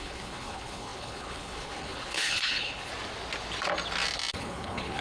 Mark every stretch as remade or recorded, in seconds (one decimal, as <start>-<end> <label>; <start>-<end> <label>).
0.0-2.9 remade; 2.9-4.3 recorded; 4.3-5.0 remade